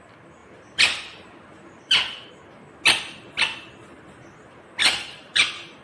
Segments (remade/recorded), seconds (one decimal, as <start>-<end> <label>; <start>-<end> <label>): 0.0-0.4 recorded; 0.4-2.3 remade; 2.3-4.8 recorded; 4.8-5.8 remade

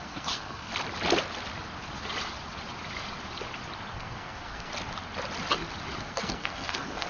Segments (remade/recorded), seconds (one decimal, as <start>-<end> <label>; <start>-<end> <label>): 0.0-0.7 remade; 0.7-3.9 recorded; 3.9-4.7 remade; 4.7-6.0 recorded; 6.0-7.1 remade